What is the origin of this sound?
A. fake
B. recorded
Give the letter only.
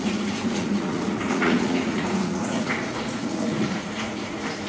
A